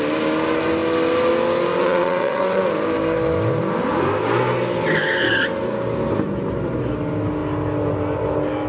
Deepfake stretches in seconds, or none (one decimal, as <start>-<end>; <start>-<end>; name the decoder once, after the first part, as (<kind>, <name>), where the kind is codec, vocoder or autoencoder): 1.8-2.6 (vocoder, WaveNeXt)